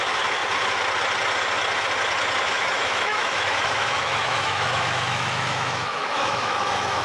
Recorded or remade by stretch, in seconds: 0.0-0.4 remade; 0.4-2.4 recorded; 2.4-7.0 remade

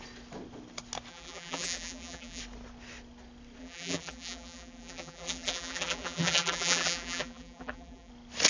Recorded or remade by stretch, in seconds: 0.0-1.1 recorded; 1.1-2.4 remade; 2.4-3.6 recorded; 3.6-8.1 remade; 8.1-8.5 recorded

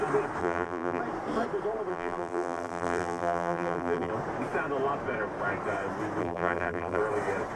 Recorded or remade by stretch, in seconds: 0.0-0.4 recorded; 0.4-1.0 remade; 1.0-1.9 recorded; 1.9-4.1 remade; 4.1-6.2 recorded; 6.2-7.0 remade; 7.0-7.6 recorded